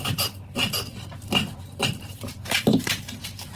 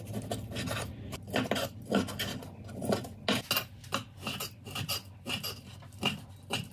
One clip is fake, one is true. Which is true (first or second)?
second